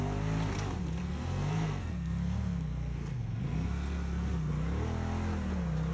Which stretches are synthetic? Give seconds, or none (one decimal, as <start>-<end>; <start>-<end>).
1.0-4.5